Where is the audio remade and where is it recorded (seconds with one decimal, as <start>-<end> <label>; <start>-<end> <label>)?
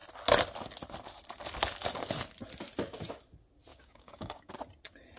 0.0-3.7 recorded; 3.7-4.5 remade; 4.5-5.2 recorded